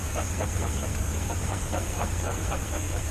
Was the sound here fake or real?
fake